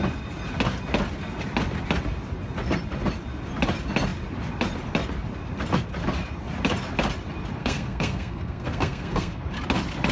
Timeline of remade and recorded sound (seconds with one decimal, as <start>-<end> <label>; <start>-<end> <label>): 0.0-7.6 recorded; 7.6-9.4 remade; 9.4-10.1 recorded